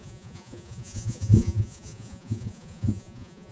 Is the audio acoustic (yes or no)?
no